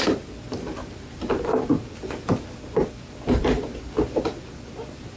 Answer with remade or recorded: recorded